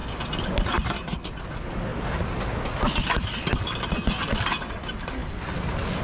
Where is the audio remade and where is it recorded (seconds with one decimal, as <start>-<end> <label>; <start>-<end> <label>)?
0.0-6.0 recorded